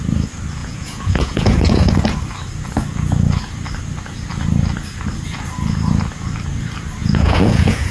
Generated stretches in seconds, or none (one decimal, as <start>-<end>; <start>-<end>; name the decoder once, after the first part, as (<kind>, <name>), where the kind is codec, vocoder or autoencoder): 0.6-1.9 (vocoder, Vocos); 7.0-7.9